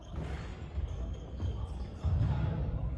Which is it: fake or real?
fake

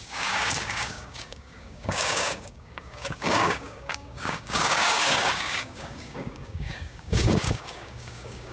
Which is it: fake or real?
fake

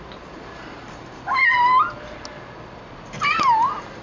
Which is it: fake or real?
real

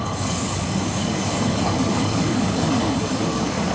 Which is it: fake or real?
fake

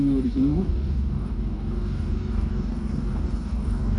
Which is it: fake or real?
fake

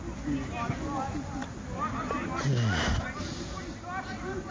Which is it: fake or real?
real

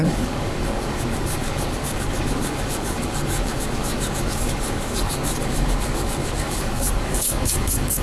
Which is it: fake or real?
fake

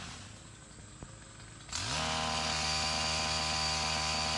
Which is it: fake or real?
real